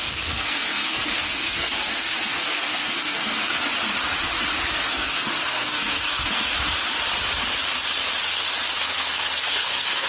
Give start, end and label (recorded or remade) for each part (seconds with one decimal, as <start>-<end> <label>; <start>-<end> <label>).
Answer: 0.0-3.5 remade; 3.5-4.7 recorded; 4.7-6.5 remade; 6.5-8.8 recorded; 8.8-10.1 remade